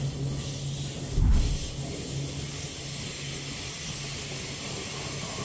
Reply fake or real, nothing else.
real